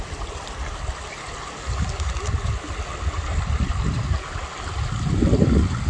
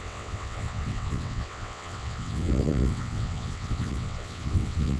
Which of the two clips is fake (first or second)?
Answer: second